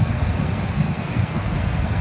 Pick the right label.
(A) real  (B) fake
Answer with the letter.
B